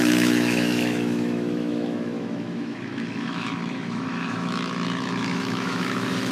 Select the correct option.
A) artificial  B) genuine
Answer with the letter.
A